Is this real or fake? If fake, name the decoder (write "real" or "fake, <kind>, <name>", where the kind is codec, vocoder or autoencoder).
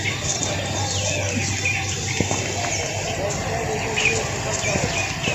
real